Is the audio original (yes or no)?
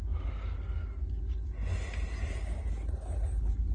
yes